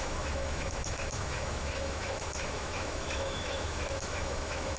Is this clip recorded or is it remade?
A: remade